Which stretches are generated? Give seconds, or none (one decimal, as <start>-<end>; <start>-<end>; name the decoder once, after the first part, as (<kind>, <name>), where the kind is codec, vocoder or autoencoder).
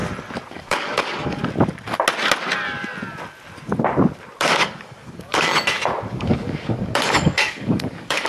0.5-1.4 (codec, DAC); 4.4-5.5; 6.1-8.3